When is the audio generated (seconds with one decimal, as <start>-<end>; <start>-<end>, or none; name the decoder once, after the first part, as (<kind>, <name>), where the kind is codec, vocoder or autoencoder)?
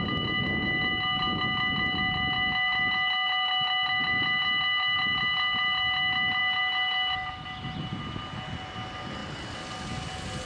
none